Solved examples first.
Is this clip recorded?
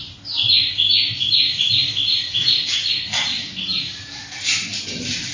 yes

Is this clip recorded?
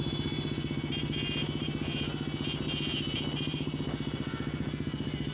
yes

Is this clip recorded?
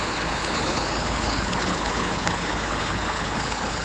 no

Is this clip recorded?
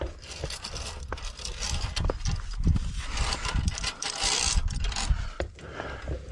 yes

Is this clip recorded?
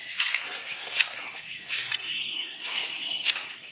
no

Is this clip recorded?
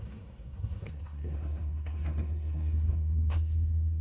no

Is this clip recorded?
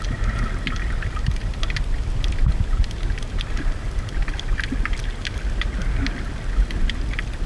yes